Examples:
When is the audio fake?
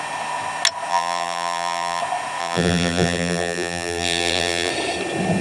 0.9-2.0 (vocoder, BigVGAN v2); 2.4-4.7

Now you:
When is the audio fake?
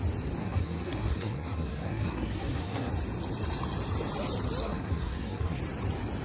0.4-2.9 (codec, SNAC); 4.6-5.6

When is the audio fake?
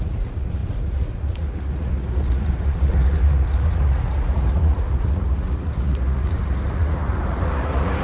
0.0-8.0 (vocoder, Vocos)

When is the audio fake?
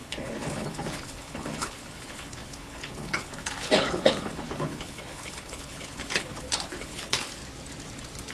0.0-7.4 (codec, HILCodec)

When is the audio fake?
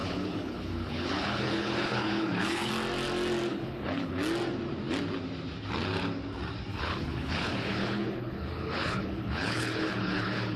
0.0-2.7 (codec, HILCodec); 3.5-4.2; 6.7-10.6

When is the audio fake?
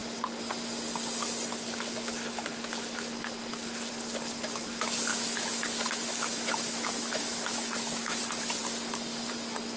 5.1-8.2 (autoencoder, DAC-VAE)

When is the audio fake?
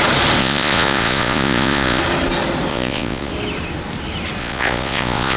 0.4-2.0 (vocoder, Vocos); 2.7-3.3; 4.4-5.4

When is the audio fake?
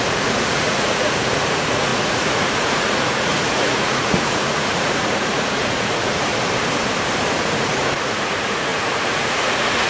0.0-6.3 (vocoder, Vocos); 7.4-9.9